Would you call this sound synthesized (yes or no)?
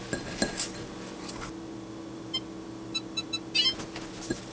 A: no